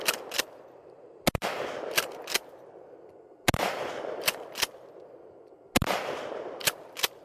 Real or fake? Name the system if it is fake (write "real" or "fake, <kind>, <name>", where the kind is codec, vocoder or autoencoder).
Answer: real